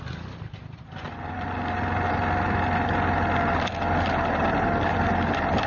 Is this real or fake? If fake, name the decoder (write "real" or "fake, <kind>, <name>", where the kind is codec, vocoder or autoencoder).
real